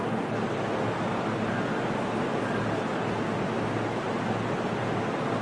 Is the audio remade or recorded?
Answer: recorded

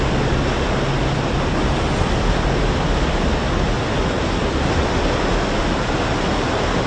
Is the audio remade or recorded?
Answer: recorded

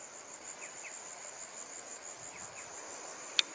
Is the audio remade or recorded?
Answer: recorded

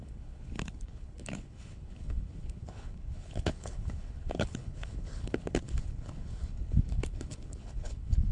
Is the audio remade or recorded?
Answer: remade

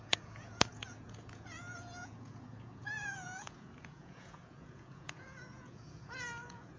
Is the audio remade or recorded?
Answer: remade